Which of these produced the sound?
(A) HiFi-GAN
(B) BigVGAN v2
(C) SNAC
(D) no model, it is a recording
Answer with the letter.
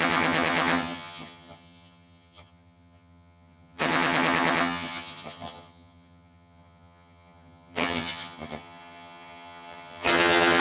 A